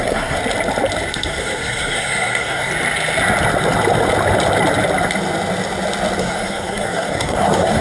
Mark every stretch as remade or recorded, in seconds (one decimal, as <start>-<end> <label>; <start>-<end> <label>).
0.0-0.4 remade; 0.4-1.1 recorded; 1.1-2.7 remade; 2.7-6.2 recorded; 6.2-7.8 remade